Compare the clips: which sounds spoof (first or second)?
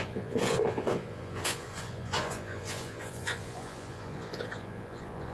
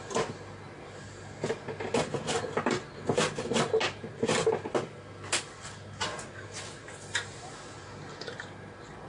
first